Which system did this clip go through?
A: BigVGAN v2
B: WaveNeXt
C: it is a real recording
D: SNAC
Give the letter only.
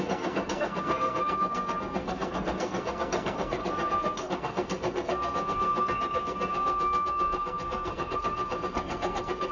D